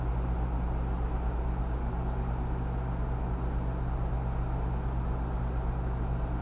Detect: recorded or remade recorded